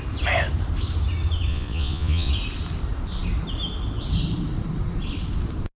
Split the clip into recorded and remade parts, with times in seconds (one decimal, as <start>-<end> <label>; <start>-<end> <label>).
0.0-1.5 recorded; 1.5-2.3 remade; 2.3-5.8 recorded